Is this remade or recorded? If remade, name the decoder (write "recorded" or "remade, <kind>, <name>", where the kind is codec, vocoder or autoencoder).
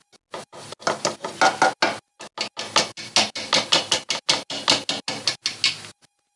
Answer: recorded